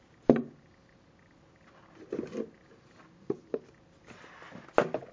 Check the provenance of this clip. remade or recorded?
recorded